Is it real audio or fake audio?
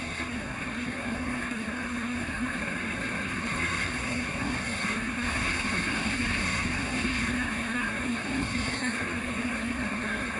fake